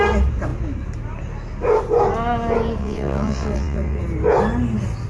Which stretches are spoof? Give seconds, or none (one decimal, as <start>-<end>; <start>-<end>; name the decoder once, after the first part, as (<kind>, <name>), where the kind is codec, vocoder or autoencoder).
2.8-4.0 (vocoder, WaveNeXt)